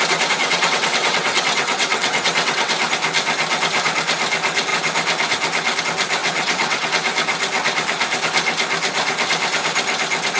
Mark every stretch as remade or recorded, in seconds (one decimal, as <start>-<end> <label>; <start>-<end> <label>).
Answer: 0.0-0.4 recorded; 0.4-2.7 remade; 2.7-6.2 recorded; 6.2-6.9 remade; 6.9-10.4 recorded